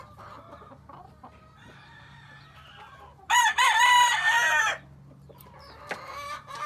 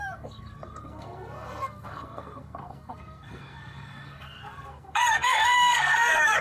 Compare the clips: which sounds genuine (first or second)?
first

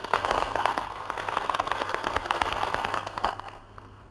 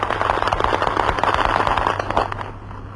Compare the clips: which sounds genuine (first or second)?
second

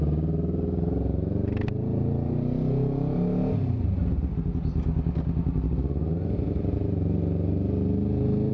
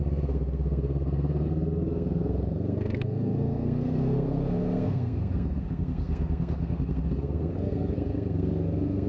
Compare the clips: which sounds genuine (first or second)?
first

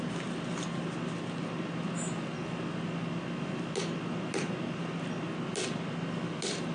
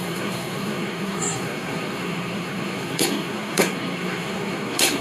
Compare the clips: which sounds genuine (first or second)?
first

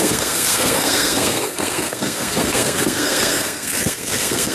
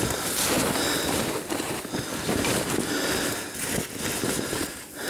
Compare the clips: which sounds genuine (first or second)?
second